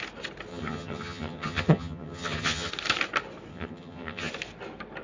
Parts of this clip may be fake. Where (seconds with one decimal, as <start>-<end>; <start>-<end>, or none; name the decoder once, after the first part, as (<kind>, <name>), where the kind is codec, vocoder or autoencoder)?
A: 0.5-2.7 (vocoder, HiFi-GAN); 3.5-4.3